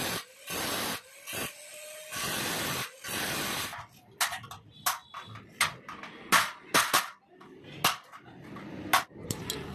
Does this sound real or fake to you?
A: real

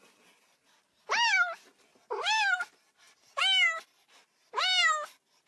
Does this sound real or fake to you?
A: real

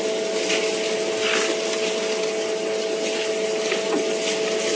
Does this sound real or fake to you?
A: real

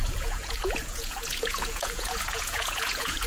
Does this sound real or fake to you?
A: fake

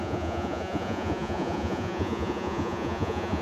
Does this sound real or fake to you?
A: fake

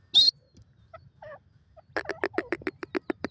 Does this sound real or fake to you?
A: real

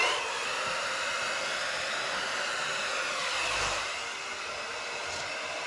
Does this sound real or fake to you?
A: real